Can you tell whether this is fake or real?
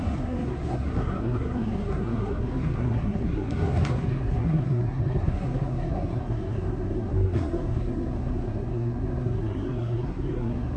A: fake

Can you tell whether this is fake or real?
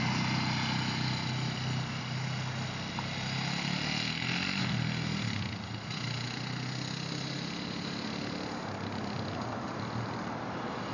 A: real